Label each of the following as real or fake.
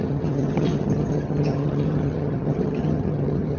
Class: fake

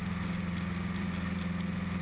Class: real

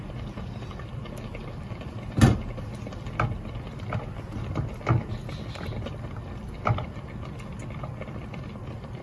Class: real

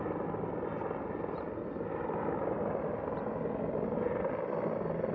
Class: real